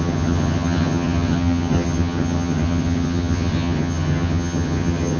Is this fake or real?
fake